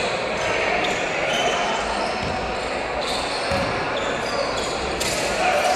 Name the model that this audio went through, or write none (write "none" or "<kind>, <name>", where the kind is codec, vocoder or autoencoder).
none